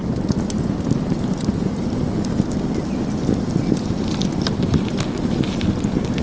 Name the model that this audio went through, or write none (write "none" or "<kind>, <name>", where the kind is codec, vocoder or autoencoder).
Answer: none